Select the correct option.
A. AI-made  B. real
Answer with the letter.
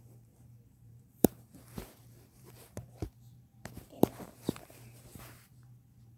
A